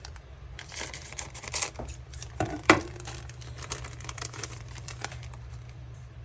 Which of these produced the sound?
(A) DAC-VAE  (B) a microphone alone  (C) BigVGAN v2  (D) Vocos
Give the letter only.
C